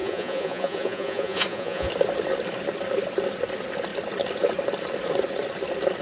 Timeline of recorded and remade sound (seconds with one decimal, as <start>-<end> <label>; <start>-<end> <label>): 0.0-1.9 remade; 1.9-6.0 recorded